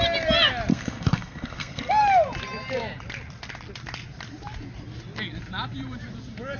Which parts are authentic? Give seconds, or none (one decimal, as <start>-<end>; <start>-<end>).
0.0-0.7; 1.9-6.6